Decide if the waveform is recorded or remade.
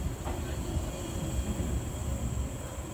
recorded